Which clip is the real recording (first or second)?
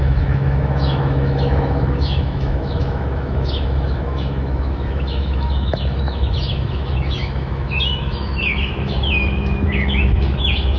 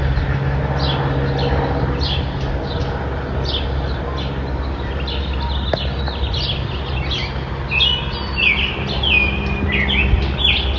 second